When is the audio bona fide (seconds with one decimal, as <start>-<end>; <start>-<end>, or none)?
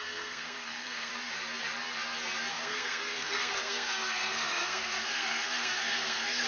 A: 1.1-2.5